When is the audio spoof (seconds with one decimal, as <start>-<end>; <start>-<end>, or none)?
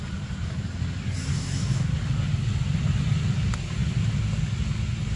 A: 1.3-1.9